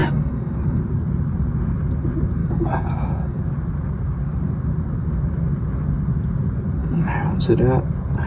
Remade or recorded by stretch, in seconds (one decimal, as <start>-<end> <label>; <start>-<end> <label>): 0.0-0.8 remade; 0.8-2.4 recorded; 2.4-3.4 remade; 3.4-6.8 recorded; 6.8-7.4 remade; 7.4-8.3 recorded